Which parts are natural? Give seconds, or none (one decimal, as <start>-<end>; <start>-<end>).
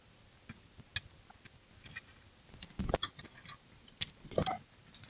0.0-5.1